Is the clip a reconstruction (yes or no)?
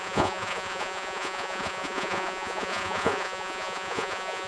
yes